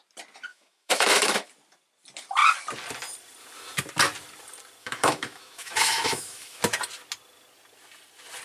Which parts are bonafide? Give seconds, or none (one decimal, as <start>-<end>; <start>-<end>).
0.0-0.5; 1.5-4.8; 6.6-8.4